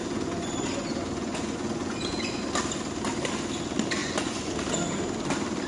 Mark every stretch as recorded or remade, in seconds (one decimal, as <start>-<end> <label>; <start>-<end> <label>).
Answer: 0.0-2.4 remade; 2.4-4.0 recorded; 4.0-4.5 remade; 4.5-5.7 recorded